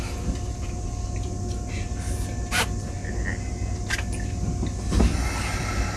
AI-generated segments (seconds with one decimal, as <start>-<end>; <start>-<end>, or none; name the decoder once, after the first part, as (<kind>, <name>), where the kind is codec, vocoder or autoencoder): none

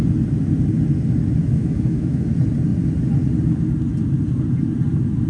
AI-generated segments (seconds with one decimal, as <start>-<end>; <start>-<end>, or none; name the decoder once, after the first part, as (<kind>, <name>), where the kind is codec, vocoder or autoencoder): 1.4-2.3 (autoencoder, DAC-VAE)

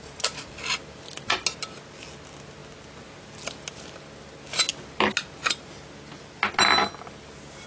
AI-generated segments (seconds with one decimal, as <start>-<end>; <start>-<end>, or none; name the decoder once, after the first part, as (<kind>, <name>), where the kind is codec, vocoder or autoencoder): none

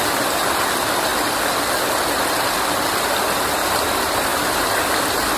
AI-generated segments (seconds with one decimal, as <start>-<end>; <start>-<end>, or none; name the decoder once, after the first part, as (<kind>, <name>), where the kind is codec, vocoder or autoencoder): none

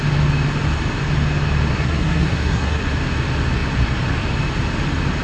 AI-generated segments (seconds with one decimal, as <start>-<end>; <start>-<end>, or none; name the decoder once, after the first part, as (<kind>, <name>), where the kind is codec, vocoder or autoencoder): 1.7-2.8 (codec, SNAC)